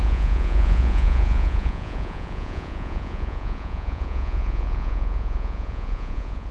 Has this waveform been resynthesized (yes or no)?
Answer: yes